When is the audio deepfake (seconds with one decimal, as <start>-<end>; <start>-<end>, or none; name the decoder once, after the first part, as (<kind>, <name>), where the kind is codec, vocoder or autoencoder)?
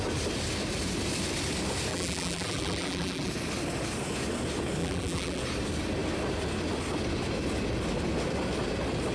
1.9-3.3 (vocoder, BigVGAN v2); 4.8-5.4